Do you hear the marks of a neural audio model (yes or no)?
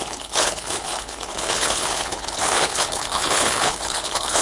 yes